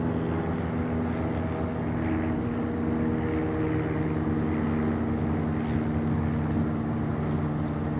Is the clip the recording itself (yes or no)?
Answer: yes